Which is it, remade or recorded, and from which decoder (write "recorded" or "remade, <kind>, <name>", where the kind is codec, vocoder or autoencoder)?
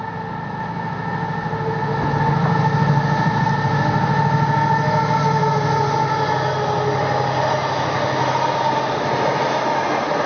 recorded